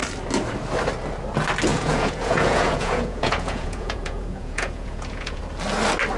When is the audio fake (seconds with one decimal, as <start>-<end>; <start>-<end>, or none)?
1.7-5.4